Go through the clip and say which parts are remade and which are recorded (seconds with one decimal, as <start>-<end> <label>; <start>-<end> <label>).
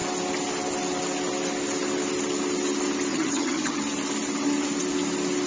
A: 0.0-3.1 recorded; 3.1-3.8 remade; 3.8-5.5 recorded